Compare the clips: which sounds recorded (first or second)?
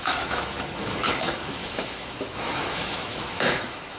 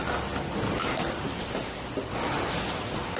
second